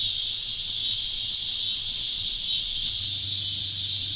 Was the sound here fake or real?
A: real